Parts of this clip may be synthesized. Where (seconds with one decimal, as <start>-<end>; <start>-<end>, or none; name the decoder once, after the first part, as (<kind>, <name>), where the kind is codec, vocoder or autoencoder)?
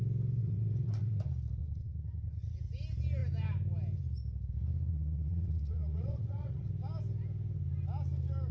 0.4-1.2 (vocoder, WaveNeXt); 1.6-2.5; 4.9-6.7